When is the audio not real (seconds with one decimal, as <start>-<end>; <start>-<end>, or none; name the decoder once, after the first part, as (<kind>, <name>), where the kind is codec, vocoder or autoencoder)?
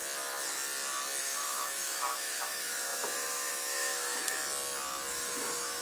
1.2-4.4 (autoencoder, DAC-VAE); 5.1-5.8